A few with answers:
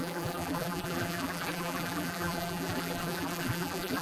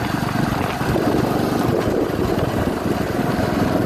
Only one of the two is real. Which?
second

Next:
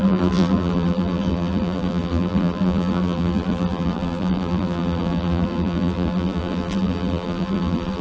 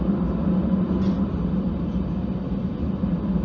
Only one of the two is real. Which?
second